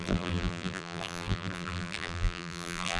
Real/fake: fake